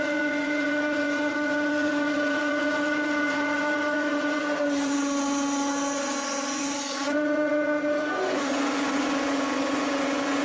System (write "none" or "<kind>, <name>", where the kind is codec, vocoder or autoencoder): vocoder, Vocos